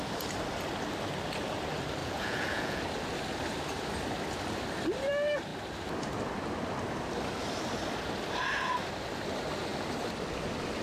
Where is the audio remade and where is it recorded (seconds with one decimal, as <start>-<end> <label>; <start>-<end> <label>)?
0.0-2.0 recorded; 2.0-2.8 remade; 2.8-10.8 recorded